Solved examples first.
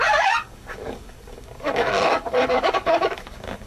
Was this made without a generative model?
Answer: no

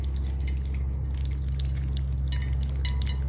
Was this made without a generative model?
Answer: yes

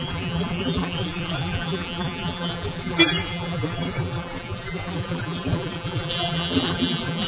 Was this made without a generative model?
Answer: no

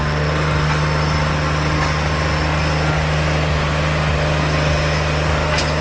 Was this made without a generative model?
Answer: yes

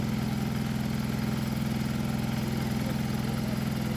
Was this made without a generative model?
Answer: yes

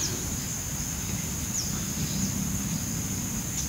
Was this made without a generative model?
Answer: yes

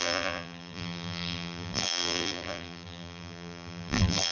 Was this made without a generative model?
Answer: no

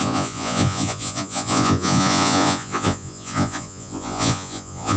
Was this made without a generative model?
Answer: no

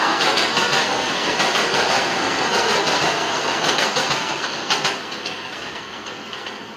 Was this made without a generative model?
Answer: no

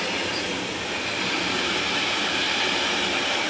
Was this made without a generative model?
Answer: yes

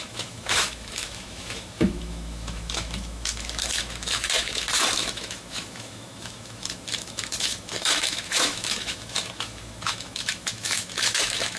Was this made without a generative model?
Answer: no